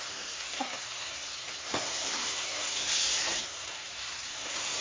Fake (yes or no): yes